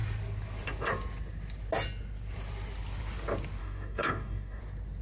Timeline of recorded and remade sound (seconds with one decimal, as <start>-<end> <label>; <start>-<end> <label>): 0.0-3.6 recorded; 3.6-4.6 remade; 4.6-5.0 recorded